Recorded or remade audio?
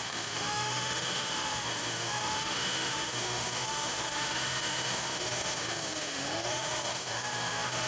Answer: remade